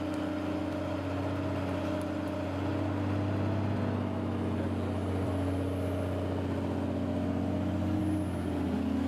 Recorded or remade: recorded